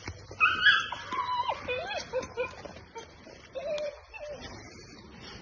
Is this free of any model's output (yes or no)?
yes